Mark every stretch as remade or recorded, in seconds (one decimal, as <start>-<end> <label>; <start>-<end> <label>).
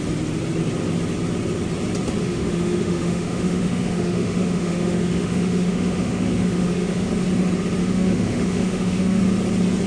0.0-2.2 recorded; 2.2-7.1 remade; 7.1-7.8 recorded; 7.8-9.2 remade; 9.2-9.9 recorded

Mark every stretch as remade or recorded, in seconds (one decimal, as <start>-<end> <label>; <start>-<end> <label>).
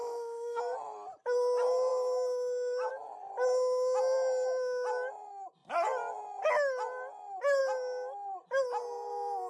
0.0-0.6 remade; 0.6-9.5 recorded